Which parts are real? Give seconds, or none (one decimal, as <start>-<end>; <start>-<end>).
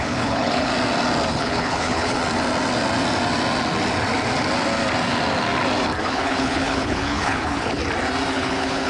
0.7-1.3; 2.2-6.0; 7.8-8.3